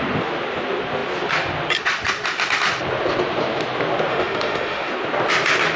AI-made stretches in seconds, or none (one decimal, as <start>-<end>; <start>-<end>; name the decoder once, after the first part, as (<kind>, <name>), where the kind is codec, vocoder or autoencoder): 4.1-4.9 (autoencoder, DAC-VAE)